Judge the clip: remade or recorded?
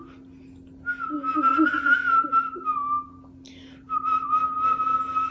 recorded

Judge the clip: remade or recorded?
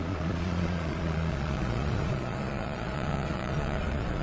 remade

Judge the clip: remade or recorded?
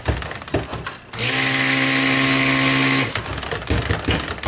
recorded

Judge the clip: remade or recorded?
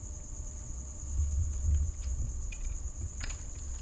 remade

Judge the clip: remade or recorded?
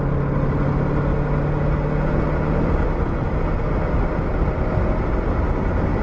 recorded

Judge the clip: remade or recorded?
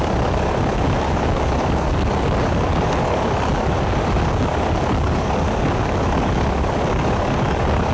remade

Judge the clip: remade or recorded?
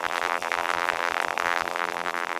remade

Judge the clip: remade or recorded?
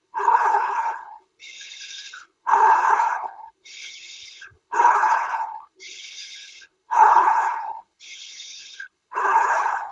remade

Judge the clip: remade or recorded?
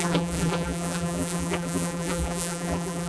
remade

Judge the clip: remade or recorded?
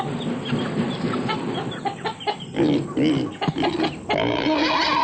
recorded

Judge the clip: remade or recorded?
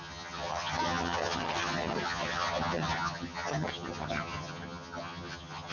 remade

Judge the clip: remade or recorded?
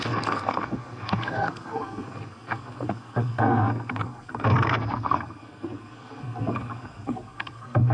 remade